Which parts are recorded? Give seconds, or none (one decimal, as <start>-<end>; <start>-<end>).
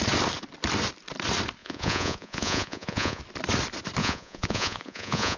0.0-1.6; 3.2-4.0